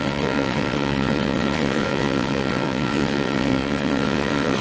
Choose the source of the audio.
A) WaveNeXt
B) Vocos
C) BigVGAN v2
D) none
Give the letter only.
A